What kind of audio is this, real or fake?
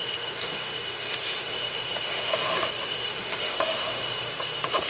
fake